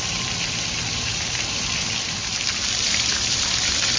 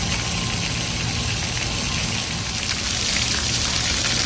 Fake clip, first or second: first